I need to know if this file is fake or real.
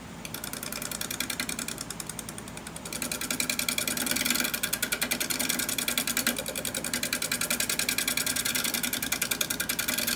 real